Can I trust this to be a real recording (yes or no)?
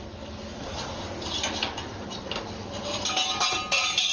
yes